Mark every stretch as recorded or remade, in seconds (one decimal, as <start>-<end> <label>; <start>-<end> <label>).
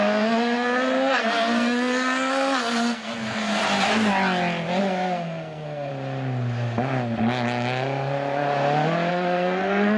0.0-3.6 remade; 3.6-4.8 recorded; 4.8-5.9 remade; 5.9-9.1 recorded; 9.1-10.0 remade